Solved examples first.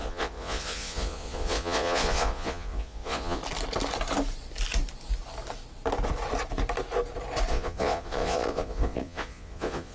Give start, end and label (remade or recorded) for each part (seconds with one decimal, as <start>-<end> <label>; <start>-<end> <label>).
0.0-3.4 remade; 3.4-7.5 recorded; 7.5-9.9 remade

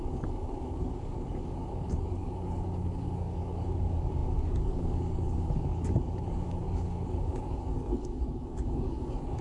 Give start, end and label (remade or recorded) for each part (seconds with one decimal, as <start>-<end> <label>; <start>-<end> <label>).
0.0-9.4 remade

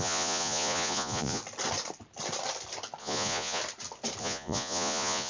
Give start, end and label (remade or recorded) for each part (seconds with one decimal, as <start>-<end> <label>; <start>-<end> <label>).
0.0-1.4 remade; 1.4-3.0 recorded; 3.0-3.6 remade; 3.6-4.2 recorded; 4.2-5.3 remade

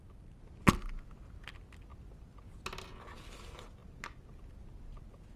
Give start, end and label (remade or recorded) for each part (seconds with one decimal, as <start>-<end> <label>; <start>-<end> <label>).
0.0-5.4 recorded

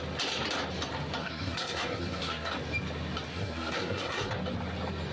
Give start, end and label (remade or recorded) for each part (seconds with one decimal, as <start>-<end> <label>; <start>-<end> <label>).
0.0-1.2 recorded; 1.2-2.5 remade; 2.5-3.3 recorded; 3.3-4.3 remade; 4.3-5.1 recorded